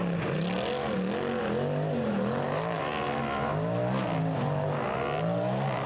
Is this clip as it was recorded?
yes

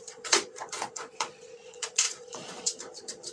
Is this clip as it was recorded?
no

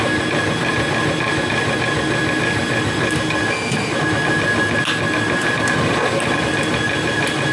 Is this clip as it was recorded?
yes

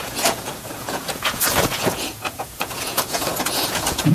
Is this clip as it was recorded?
no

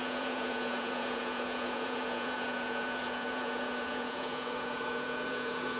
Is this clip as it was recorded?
no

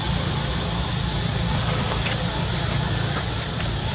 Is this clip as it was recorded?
yes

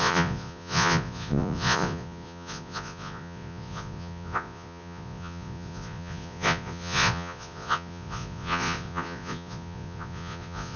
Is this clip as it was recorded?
no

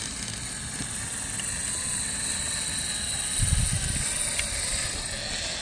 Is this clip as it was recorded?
yes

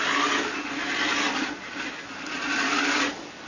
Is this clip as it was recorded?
yes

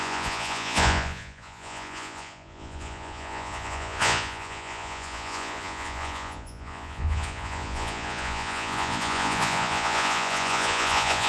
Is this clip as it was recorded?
no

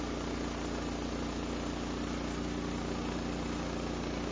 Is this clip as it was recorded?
yes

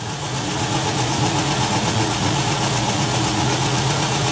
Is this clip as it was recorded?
no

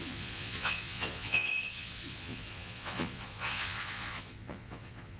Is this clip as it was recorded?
no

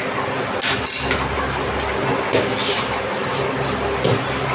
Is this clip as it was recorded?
yes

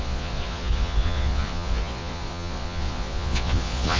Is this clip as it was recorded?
no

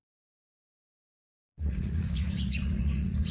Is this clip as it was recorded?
no